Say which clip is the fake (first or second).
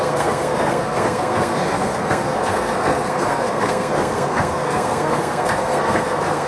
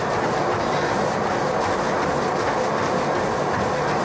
first